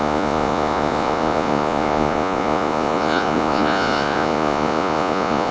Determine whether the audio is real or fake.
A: fake